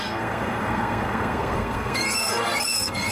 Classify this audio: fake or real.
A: fake